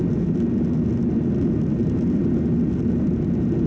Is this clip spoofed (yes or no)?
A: no